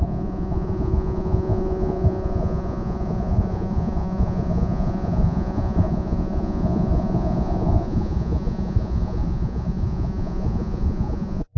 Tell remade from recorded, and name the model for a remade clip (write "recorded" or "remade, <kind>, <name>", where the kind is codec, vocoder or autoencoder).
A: remade, vocoder, Vocos